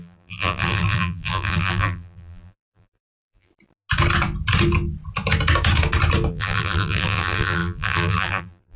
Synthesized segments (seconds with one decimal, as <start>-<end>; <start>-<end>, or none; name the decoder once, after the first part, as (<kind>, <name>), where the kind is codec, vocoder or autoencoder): 0.0-3.5 (vocoder, BigVGAN v2); 6.3-8.8